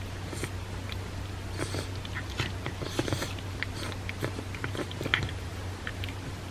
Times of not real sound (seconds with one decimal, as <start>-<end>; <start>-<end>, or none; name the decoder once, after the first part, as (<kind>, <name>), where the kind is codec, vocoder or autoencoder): 5.1-5.9 (vocoder, BigVGAN v2)